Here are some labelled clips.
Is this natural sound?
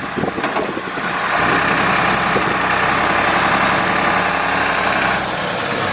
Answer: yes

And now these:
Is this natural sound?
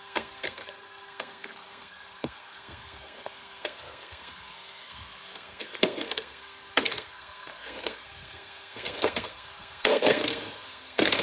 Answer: no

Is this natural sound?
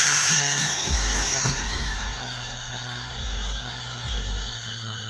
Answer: no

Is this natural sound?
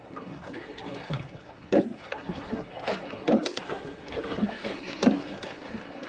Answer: no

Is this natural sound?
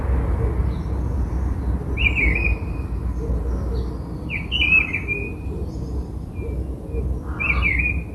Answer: yes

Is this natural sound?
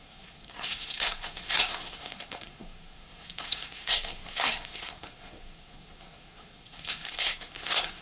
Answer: no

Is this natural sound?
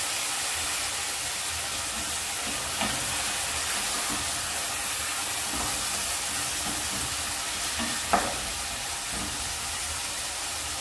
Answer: yes